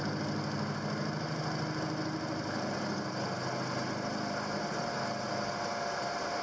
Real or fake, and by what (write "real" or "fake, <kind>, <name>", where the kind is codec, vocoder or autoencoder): real